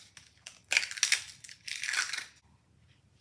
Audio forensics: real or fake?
real